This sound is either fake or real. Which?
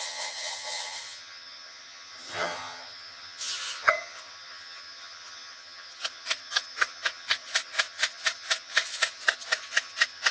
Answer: fake